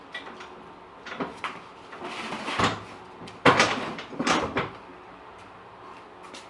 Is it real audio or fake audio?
real